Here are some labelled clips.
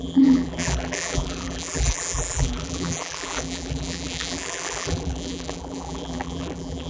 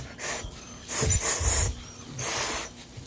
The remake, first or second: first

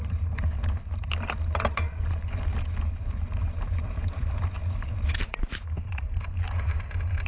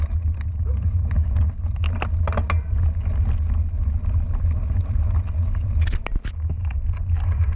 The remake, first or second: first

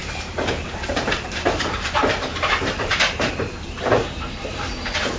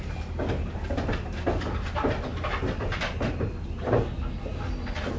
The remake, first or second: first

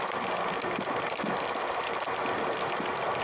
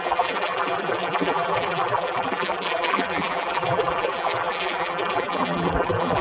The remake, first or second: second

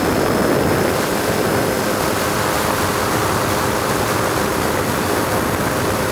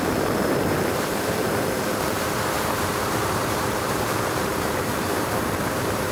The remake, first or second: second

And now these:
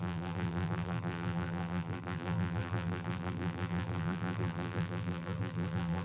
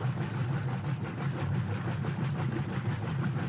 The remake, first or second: first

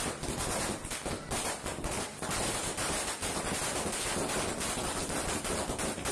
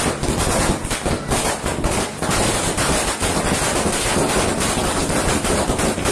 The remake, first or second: first